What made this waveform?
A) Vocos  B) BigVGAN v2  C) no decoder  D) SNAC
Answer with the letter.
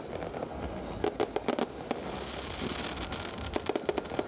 C